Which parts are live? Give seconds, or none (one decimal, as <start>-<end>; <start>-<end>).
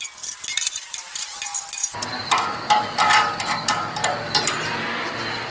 0.0-0.5; 1.2-1.8; 5.1-5.5